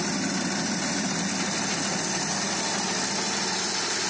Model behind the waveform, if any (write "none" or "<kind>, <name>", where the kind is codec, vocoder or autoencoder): none